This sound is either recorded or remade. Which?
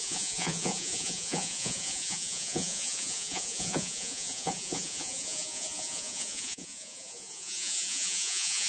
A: remade